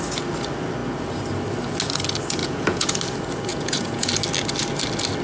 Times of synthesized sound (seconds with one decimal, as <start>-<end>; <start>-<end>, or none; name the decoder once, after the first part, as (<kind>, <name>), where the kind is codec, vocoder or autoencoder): 2.4-2.9 (vocoder, Vocos); 3.5-4.1